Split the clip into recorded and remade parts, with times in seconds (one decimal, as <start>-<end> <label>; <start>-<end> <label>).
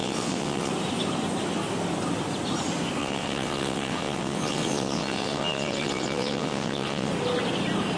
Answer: 0.0-0.7 remade; 0.7-3.0 recorded; 3.0-7.1 remade; 7.1-8.0 recorded